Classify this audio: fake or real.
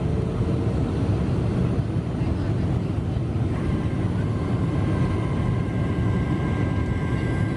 real